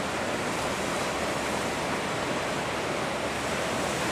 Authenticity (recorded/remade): recorded